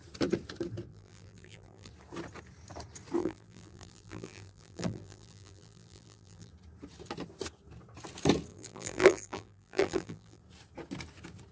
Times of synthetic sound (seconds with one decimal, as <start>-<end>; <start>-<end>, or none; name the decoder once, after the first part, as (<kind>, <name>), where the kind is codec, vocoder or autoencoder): 0.9-1.9 (vocoder, BigVGAN v2); 3.2-6.5; 8.5-10.4